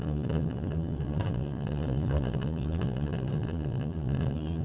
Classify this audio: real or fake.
fake